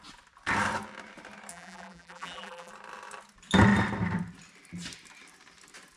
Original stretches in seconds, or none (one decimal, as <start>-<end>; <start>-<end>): 0.0-1.5; 2.7-6.0